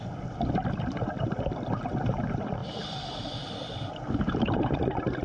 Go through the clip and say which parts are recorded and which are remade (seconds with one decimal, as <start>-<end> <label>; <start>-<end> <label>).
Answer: 0.0-2.6 recorded; 2.6-4.0 remade; 4.0-5.2 recorded

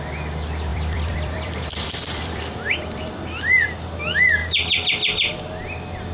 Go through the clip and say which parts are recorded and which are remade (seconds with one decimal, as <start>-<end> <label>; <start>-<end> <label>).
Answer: 0.0-0.7 recorded; 0.7-3.1 remade; 3.1-6.1 recorded

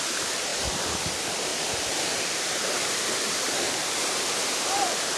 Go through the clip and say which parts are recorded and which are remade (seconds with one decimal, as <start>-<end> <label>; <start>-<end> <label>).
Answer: 0.0-1.5 remade; 1.5-2.2 recorded; 2.2-5.2 remade

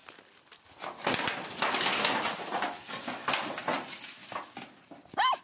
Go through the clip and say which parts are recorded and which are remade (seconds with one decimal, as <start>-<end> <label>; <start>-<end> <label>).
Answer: 0.0-4.2 recorded; 4.2-5.4 remade

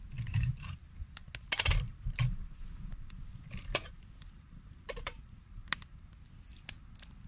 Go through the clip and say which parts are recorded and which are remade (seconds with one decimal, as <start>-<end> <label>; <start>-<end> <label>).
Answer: 0.0-0.8 remade; 0.8-2.1 recorded; 2.1-5.6 remade; 5.6-7.3 recorded

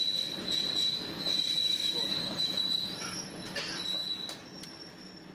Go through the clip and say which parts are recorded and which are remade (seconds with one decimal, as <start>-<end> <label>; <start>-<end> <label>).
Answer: 0.0-1.6 recorded; 1.6-2.6 remade; 2.6-5.3 recorded

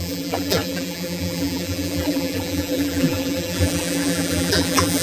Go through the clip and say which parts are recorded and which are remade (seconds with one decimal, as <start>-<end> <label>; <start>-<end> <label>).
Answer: 0.0-5.0 remade